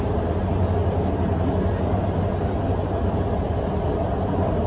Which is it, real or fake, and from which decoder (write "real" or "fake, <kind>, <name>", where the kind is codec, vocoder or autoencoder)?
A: real